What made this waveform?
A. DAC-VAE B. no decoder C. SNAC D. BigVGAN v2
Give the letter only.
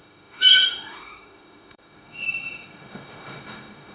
A